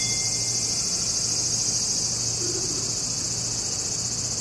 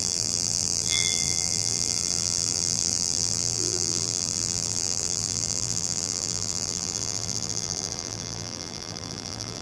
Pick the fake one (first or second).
second